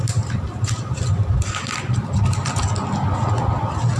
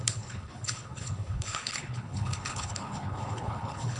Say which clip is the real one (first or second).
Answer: first